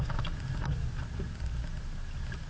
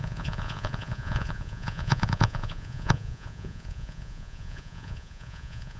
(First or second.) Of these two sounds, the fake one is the second